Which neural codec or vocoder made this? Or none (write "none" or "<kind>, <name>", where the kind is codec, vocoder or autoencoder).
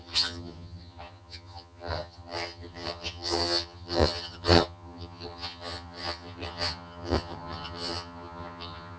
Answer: vocoder, HiFi-GAN